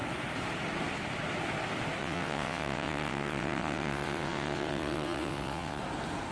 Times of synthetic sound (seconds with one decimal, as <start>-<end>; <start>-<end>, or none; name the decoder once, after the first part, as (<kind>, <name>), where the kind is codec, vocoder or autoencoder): 2.0-5.8 (vocoder, WaveNeXt)